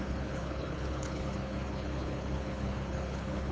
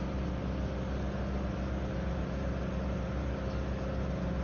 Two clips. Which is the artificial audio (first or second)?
first